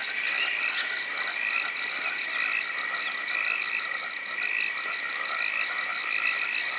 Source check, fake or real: real